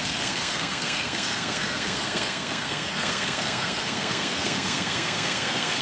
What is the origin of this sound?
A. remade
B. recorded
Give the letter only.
A